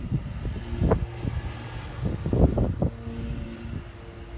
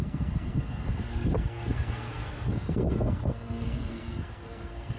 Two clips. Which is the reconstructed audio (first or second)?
second